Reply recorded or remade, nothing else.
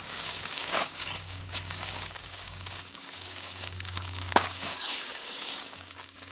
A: remade